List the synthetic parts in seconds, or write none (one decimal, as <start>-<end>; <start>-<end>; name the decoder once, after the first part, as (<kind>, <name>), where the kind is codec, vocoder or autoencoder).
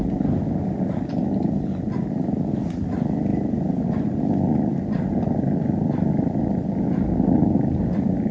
none